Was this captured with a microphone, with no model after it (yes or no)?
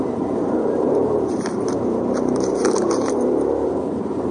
no